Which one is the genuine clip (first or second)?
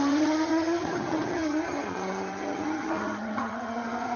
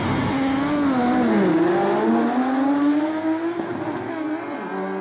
second